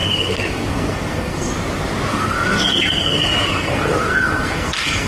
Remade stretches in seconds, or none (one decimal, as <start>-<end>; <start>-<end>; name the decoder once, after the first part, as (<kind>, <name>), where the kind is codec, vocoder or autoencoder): 0.0-1.5 (codec, SNAC); 2.1-5.1